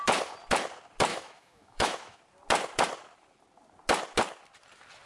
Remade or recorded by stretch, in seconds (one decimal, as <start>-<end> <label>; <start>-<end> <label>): 0.0-1.1 recorded; 1.1-2.2 remade; 2.2-5.1 recorded